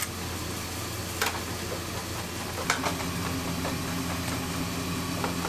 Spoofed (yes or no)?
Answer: no